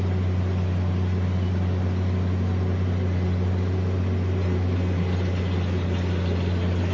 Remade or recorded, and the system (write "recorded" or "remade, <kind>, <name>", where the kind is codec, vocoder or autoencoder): recorded